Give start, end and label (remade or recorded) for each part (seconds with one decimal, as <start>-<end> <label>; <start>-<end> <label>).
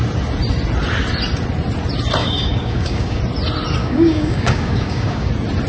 0.0-2.2 recorded; 2.2-3.2 remade; 3.2-3.8 recorded; 3.8-5.3 remade; 5.3-5.7 recorded